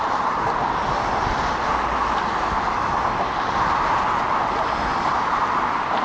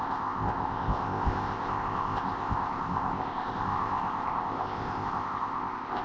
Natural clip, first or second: first